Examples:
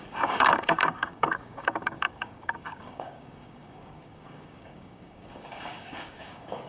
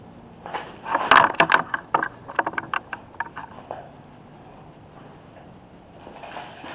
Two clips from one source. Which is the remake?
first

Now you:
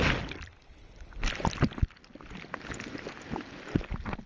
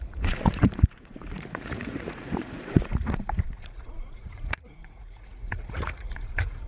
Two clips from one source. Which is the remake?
second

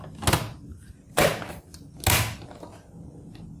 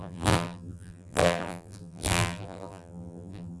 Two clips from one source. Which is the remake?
second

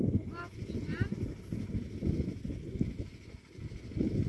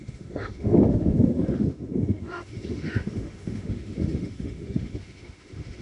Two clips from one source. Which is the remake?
second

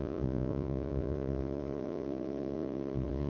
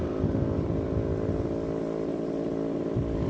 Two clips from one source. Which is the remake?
first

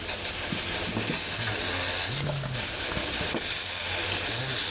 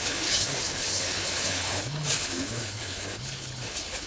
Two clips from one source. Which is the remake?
second